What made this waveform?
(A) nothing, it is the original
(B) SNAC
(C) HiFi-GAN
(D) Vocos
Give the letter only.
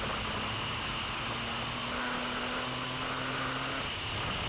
A